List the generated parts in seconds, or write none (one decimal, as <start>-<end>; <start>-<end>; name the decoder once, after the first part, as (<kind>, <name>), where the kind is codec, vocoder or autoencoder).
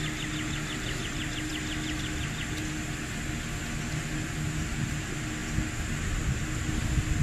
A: none